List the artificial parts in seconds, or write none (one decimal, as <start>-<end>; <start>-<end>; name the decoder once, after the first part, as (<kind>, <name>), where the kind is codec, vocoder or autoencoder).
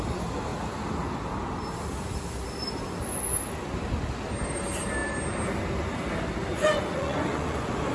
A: 6.5-7.9 (vocoder, Vocos)